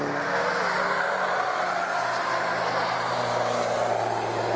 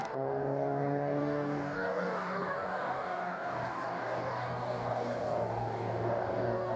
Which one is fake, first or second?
second